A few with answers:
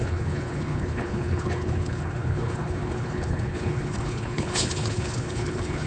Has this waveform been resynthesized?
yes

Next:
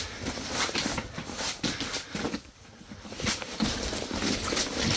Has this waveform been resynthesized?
no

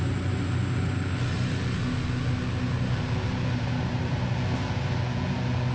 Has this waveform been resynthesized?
no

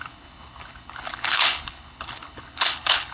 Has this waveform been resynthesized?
yes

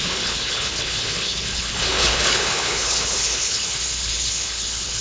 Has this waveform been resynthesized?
yes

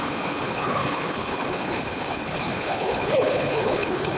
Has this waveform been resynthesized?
yes